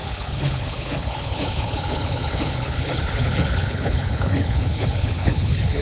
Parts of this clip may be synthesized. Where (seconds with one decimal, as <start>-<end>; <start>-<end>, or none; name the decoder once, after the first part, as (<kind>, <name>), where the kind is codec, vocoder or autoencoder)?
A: 0.0-5.8 (codec, HILCodec)